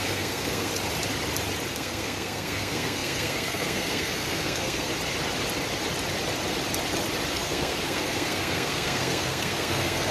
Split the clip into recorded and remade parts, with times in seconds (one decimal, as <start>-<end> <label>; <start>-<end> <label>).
0.0-0.7 remade; 0.7-1.7 recorded; 1.7-4.9 remade; 4.9-7.3 recorded; 7.3-10.1 remade